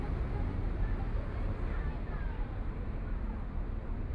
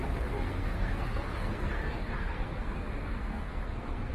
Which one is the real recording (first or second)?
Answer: first